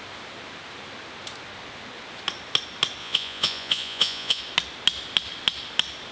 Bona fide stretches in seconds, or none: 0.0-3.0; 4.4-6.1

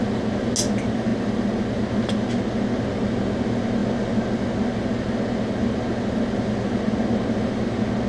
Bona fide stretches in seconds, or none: 0.0-8.1

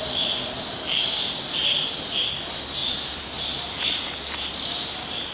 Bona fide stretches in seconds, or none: 0.0-5.3